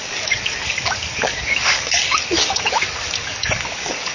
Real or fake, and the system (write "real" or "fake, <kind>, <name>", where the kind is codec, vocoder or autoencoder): fake, codec, DAC